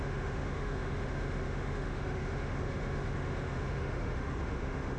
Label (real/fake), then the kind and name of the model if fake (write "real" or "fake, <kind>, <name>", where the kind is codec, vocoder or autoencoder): fake, autoencoder, DAC-VAE